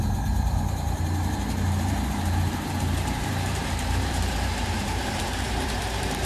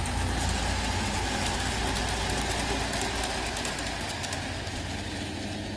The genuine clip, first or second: second